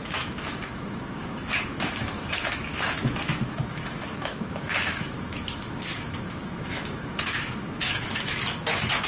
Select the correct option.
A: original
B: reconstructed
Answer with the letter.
B